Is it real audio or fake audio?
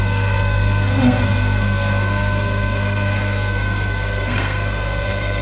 fake